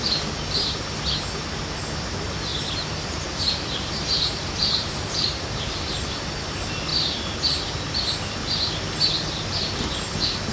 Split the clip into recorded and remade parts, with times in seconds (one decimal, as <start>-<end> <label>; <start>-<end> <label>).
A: 0.0-2.5 recorded; 2.5-6.4 remade; 6.4-10.5 recorded